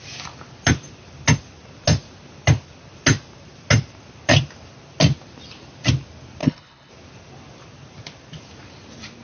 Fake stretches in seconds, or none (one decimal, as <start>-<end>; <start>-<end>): 6.4-6.9